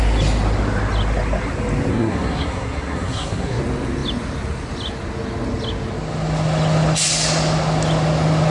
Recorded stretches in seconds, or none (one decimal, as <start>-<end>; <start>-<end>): 0.0-1.9; 3.6-8.5

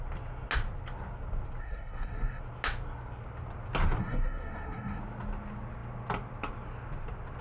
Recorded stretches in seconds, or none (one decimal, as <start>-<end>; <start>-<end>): 0.0-1.6; 2.4-4.0; 5.0-7.4